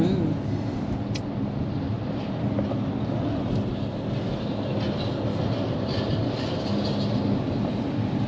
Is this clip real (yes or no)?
yes